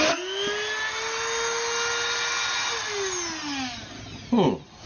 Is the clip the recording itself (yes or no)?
yes